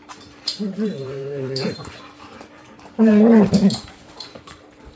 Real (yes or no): no